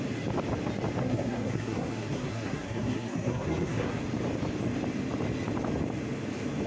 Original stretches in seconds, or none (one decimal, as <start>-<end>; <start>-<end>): 0.0-1.0; 4.0-6.7